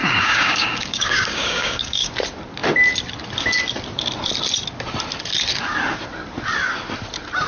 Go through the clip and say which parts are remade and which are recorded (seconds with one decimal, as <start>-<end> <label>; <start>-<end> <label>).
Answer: 0.0-2.1 remade; 2.1-7.5 recorded

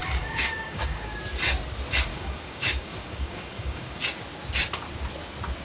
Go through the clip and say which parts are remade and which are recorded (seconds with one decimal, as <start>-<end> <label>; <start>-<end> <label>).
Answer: 0.0-1.2 remade; 1.2-2.1 recorded; 2.1-4.0 remade; 4.0-5.6 recorded